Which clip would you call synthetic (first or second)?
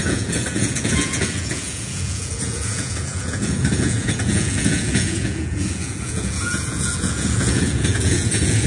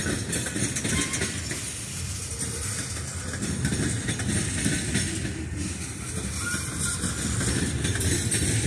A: first